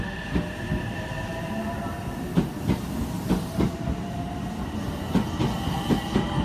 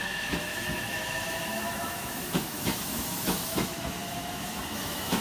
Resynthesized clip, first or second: second